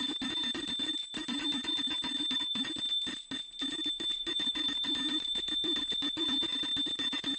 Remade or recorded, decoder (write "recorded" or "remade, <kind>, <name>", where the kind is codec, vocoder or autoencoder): recorded